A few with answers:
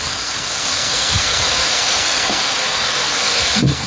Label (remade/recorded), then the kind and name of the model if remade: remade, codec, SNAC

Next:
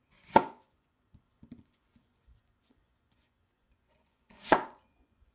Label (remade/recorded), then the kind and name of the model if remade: remade, vocoder, Vocos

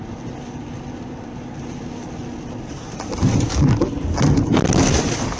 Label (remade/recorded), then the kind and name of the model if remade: recorded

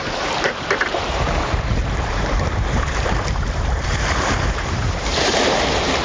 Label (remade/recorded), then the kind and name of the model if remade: remade, vocoder, BigVGAN v2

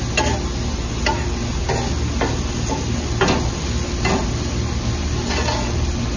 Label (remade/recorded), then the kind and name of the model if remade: recorded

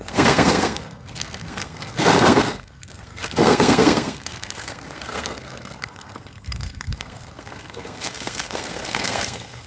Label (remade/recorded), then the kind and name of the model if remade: remade, codec, SNAC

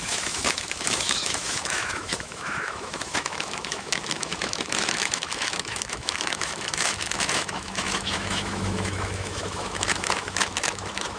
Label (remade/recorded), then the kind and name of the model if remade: remade, autoencoder, DAC-VAE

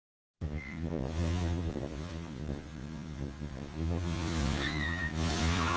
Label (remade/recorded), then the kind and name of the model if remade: remade, vocoder, Vocos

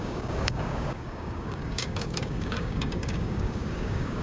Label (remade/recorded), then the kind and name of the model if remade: remade, codec, DAC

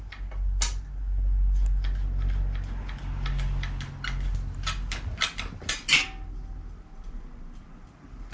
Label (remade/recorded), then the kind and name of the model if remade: recorded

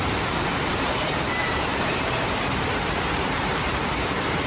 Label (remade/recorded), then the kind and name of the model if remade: remade, vocoder, BigVGAN v2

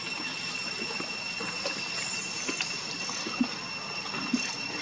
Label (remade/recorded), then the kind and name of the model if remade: recorded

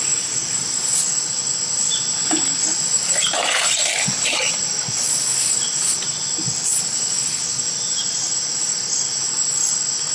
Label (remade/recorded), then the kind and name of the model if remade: recorded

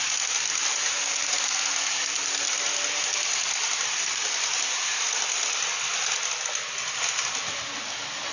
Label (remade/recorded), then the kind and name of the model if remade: recorded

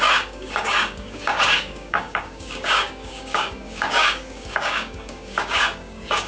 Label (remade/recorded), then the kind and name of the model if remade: remade, codec, DAC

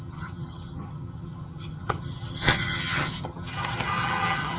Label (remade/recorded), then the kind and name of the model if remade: remade, vocoder, HiFi-GAN